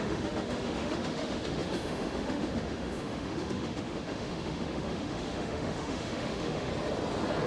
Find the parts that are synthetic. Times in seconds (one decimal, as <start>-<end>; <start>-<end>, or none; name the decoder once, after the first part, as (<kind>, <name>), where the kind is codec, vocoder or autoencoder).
0.0-6.7 (autoencoder, DAC-VAE)